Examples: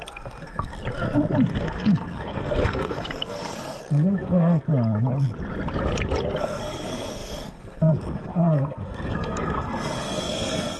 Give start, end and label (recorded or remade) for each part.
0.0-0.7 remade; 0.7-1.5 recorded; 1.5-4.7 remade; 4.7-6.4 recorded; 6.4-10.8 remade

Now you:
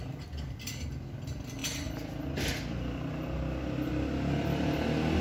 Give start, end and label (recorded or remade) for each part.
0.0-5.2 recorded

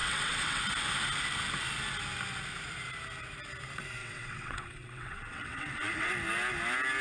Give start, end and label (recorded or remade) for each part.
0.0-0.6 remade; 0.6-4.0 recorded; 4.0-6.1 remade; 6.1-7.0 recorded

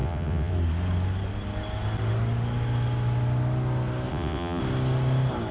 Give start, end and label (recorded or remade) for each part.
0.0-0.5 remade; 0.5-4.1 recorded; 4.1-4.6 remade; 4.6-5.5 recorded

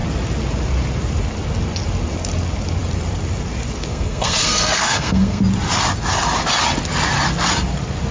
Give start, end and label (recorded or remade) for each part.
0.0-3.9 recorded; 3.9-5.4 remade; 5.4-8.1 recorded

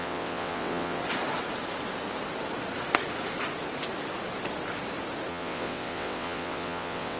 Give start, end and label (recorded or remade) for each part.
0.0-1.0 remade; 1.0-5.3 recorded; 5.3-7.2 remade

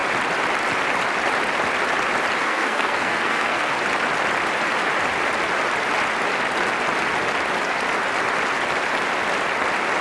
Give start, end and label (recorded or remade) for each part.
0.0-2.4 recorded; 2.4-3.7 remade; 3.7-10.0 recorded

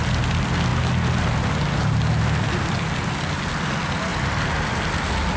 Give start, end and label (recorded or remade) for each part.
0.0-5.4 recorded